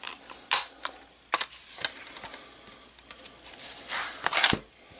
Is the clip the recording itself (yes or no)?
yes